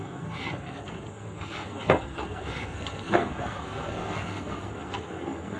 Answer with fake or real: fake